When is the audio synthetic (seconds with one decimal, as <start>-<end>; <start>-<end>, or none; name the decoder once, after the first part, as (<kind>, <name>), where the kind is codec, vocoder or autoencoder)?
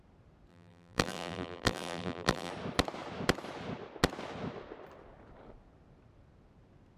0.5-2.5 (vocoder, BigVGAN v2)